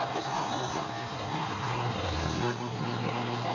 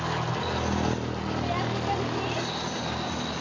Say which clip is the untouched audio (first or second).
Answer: second